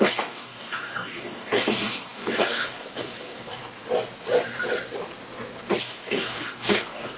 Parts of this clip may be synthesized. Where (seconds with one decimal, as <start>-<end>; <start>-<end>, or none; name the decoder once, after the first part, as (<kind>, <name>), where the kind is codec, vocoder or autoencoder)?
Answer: 0.0-3.6 (codec, DAC); 5.8-7.2